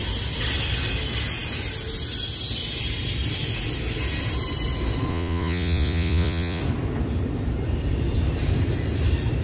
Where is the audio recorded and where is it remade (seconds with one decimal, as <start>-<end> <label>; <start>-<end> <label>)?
0.0-5.1 recorded; 5.1-6.6 remade; 6.6-9.4 recorded